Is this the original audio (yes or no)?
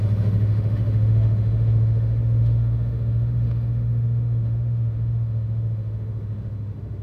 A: no